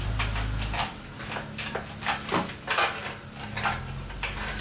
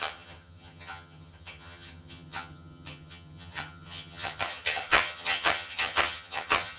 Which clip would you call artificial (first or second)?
second